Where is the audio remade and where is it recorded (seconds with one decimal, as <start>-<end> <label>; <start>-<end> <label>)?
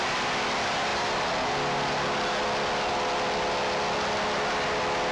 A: 0.0-5.1 recorded